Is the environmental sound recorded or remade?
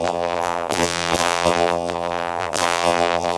remade